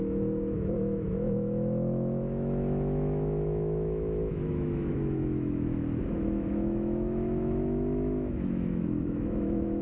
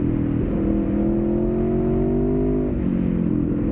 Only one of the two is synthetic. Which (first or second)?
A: first